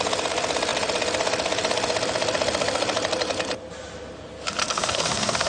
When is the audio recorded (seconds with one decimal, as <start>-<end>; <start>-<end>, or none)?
0.0-4.6